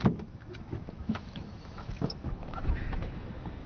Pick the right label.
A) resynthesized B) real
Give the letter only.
A